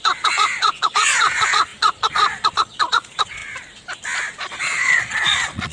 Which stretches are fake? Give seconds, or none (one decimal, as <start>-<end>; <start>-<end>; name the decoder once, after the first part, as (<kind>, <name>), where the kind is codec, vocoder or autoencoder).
0.0-3.4 (vocoder, Vocos); 4.5-5.7